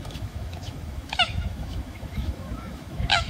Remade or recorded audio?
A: remade